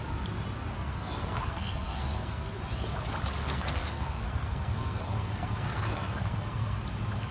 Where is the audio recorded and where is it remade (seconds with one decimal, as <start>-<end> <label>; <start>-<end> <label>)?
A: 0.0-0.7 recorded; 0.7-2.6 remade; 2.6-3.4 recorded; 3.4-6.8 remade; 6.8-7.3 recorded